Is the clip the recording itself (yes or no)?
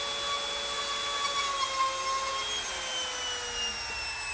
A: yes